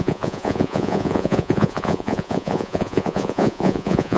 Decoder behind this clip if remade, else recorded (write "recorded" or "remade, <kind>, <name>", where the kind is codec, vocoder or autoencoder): remade, vocoder, Vocos